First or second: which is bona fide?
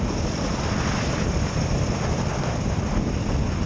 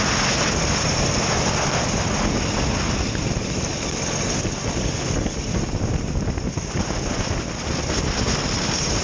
second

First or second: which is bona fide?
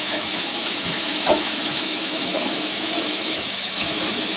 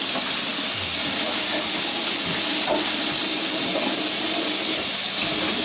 second